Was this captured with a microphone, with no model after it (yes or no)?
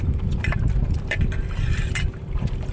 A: no